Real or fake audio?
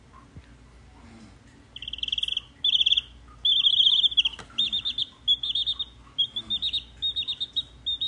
real